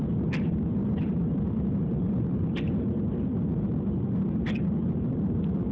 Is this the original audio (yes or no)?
no